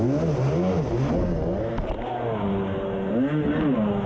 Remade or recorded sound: recorded